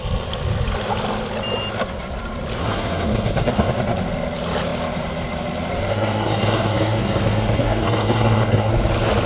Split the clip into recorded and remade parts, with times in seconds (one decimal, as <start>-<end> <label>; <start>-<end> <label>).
0.0-2.6 recorded; 2.6-3.7 remade; 3.7-5.9 recorded; 5.9-8.7 remade; 8.7-9.3 recorded

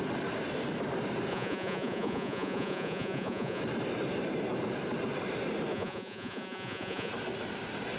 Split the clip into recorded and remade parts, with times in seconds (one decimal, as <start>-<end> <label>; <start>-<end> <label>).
0.0-1.3 recorded; 1.3-3.6 remade; 3.6-5.7 recorded; 5.7-7.1 remade; 7.1-8.0 recorded

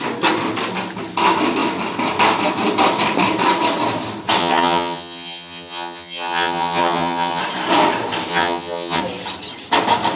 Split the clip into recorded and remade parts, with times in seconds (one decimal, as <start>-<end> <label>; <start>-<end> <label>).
0.0-4.4 recorded; 4.4-7.4 remade; 7.4-8.3 recorded; 8.3-9.0 remade; 9.0-10.2 recorded